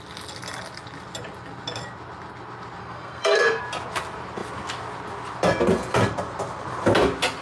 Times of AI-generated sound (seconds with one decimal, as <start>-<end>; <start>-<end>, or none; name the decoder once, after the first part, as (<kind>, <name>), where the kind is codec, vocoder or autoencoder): 2.8-3.6 (codec, SNAC)